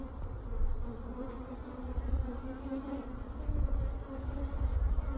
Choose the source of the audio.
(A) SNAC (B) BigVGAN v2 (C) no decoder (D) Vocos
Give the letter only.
C